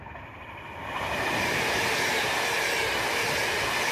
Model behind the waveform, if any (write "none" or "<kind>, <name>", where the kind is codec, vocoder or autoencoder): none